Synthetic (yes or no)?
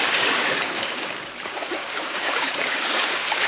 yes